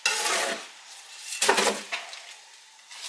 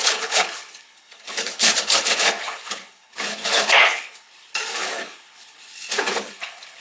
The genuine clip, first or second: first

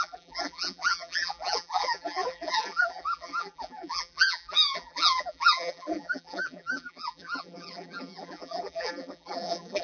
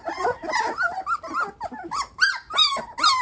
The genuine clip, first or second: second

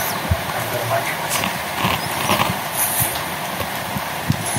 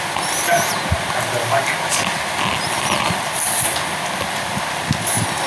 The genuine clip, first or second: second